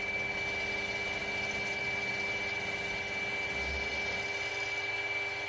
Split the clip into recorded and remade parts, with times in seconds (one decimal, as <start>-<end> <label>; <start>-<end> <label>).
0.0-5.5 recorded